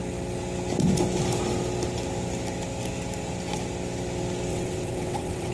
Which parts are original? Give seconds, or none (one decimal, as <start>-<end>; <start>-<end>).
0.0-4.5